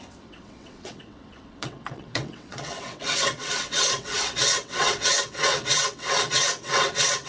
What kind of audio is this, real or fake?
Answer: fake